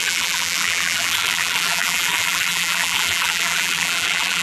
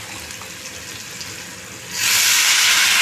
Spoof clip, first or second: first